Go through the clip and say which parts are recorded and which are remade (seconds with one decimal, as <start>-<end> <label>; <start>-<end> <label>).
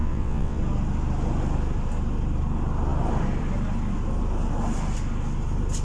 0.0-0.6 remade; 0.6-5.8 recorded